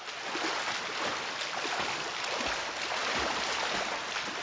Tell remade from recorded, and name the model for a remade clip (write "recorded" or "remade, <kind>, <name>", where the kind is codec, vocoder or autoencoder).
recorded